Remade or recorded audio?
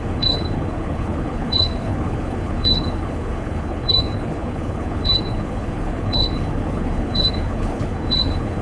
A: remade